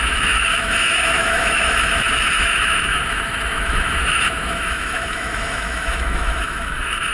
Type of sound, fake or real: fake